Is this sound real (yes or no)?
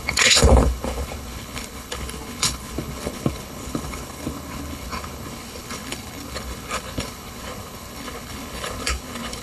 no